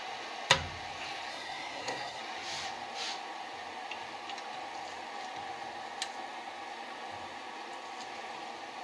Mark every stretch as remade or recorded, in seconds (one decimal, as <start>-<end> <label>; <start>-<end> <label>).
0.0-1.3 recorded; 1.3-2.2 remade; 2.2-8.8 recorded